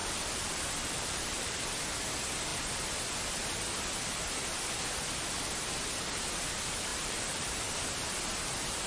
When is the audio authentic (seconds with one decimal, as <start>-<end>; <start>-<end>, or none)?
1.5-6.9; 7.5-8.9